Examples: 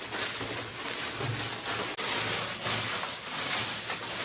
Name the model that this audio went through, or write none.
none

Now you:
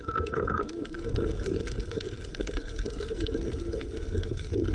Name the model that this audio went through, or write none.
codec, SNAC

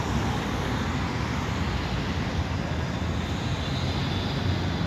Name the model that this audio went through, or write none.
none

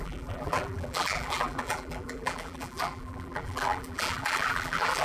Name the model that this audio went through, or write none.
vocoder, BigVGAN v2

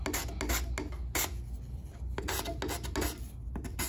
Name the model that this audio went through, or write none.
none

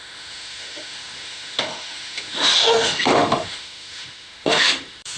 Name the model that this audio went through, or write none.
autoencoder, DAC-VAE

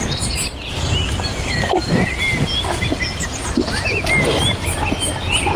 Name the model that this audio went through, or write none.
none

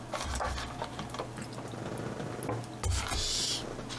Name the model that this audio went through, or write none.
none